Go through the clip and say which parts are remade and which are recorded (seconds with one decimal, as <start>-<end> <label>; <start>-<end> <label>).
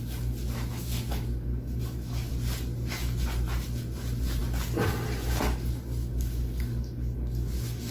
0.0-0.7 recorded; 0.7-2.3 remade; 2.3-6.0 recorded; 6.0-7.9 remade